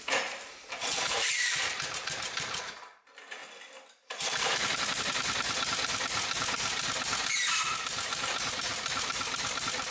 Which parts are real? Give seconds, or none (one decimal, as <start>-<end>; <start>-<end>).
3.4-7.5